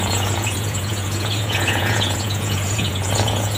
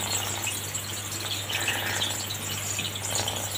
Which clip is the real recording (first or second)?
second